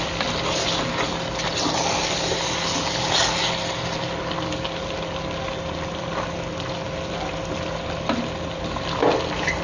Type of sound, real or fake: real